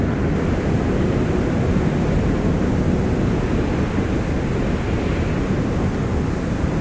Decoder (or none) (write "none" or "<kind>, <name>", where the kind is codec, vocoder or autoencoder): none